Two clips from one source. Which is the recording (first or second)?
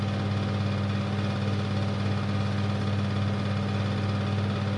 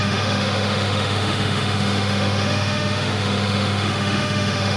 first